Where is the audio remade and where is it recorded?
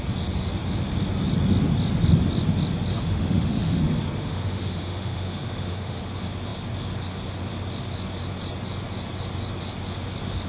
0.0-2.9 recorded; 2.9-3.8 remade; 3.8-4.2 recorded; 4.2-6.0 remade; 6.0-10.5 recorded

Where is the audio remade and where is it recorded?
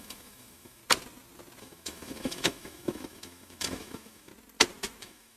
0.0-0.8 remade; 0.8-1.6 recorded; 1.6-4.3 remade; 4.3-5.0 recorded; 5.0-5.4 remade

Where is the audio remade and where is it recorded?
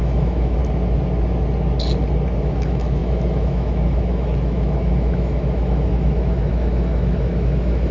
0.0-0.6 remade; 0.6-2.4 recorded; 2.4-7.9 remade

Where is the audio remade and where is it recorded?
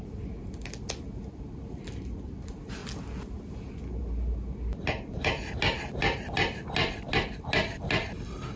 0.0-8.6 recorded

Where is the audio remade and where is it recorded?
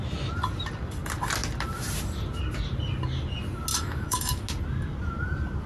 0.0-3.7 recorded; 3.7-4.4 remade; 4.4-5.7 recorded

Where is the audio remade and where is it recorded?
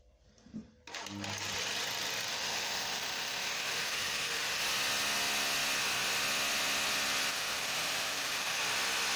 0.0-2.3 recorded; 2.3-4.6 remade; 4.6-7.3 recorded; 7.3-8.6 remade; 8.6-9.2 recorded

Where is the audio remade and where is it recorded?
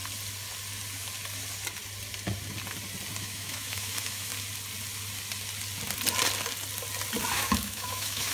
0.0-3.2 recorded; 3.2-4.3 remade; 4.3-7.3 recorded; 7.3-8.3 remade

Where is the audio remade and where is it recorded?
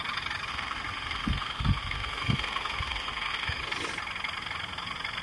0.0-0.5 recorded; 0.5-3.6 remade; 3.6-5.2 recorded